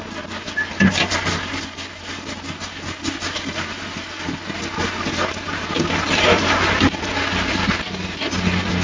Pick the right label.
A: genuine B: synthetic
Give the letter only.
A